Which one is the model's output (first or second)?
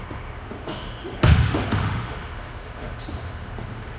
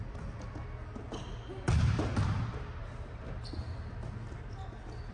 first